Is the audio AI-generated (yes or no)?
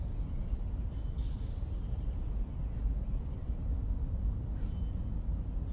no